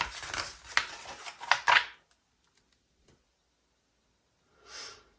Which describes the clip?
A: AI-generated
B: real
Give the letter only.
B